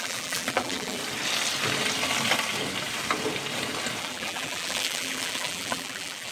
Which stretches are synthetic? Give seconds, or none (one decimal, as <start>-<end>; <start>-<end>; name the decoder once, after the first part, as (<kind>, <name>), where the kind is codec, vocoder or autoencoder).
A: 0.0-1.0 (vocoder, BigVGAN v2); 4.0-6.3